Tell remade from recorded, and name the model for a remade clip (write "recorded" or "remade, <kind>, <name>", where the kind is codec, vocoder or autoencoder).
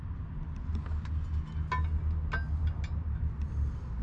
recorded